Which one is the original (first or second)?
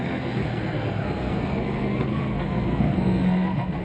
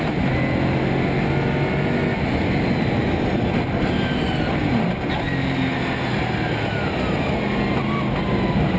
second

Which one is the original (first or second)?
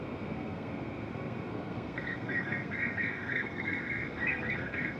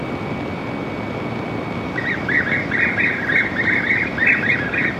second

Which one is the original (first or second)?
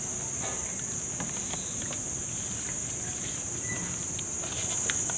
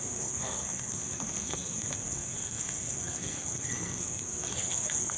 first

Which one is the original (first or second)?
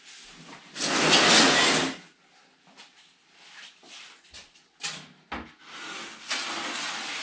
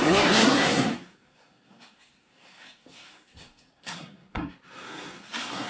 first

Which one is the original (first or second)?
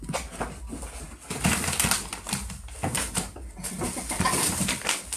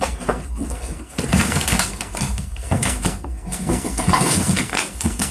first